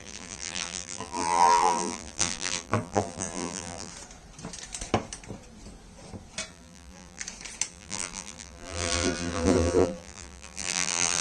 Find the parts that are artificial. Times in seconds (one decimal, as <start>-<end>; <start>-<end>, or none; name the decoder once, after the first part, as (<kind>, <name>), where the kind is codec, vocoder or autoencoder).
0.0-3.9 (vocoder, BigVGAN v2); 6.5-7.2; 7.7-11.2